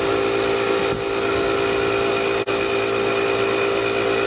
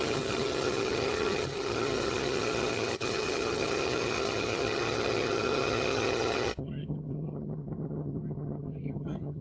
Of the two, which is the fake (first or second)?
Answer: second